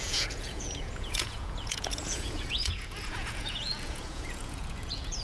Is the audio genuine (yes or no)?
no